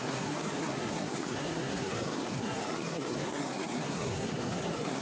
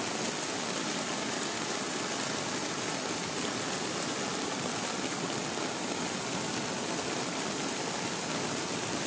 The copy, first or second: first